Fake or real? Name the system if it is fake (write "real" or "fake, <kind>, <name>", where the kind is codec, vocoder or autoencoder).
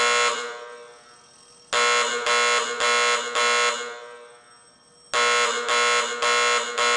real